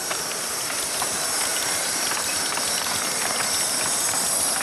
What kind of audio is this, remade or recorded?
remade